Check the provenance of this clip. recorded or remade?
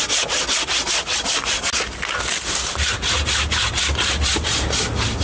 recorded